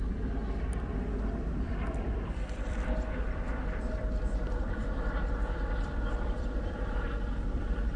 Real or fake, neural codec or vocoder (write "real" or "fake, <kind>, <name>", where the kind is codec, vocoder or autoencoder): fake, vocoder, BigVGAN v2